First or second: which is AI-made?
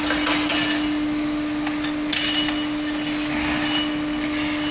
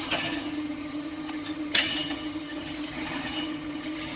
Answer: second